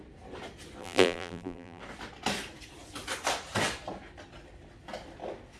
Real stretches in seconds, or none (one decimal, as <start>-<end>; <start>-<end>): 0.0-0.8; 1.8-5.6